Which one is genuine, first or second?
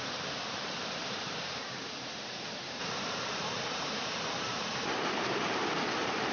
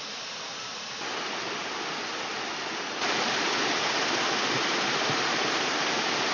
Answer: second